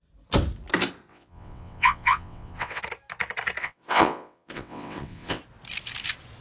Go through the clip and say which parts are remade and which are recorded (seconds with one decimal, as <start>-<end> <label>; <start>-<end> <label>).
0.0-1.1 recorded; 1.1-2.8 remade; 2.8-3.6 recorded; 3.6-5.4 remade; 5.4-6.4 recorded